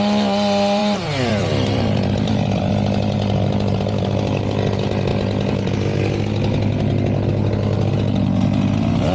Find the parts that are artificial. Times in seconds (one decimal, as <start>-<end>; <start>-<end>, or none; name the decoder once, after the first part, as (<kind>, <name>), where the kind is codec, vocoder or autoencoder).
0.8-2.7 (vocoder, BigVGAN v2); 5.1-6.2